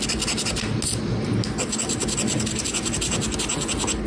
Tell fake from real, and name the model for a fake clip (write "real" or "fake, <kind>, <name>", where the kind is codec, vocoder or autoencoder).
real